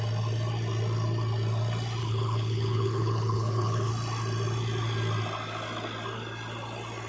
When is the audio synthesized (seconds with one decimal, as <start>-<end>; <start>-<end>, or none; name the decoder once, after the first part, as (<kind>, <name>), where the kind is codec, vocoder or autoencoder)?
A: 2.0-3.9 (codec, HILCodec)